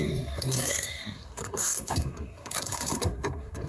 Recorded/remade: remade